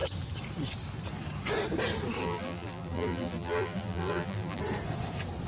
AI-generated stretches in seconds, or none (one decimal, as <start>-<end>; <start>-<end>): 2.2-4.6